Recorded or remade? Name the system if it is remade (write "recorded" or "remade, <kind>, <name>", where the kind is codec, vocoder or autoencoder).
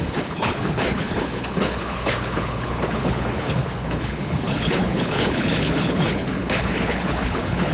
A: remade, codec, HILCodec